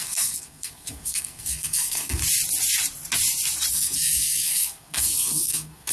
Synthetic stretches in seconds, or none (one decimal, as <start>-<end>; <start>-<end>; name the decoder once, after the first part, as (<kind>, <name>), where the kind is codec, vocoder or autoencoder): 0.0-2.2 (codec, SNAC); 3.7-5.9